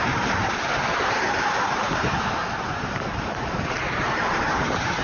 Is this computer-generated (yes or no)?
yes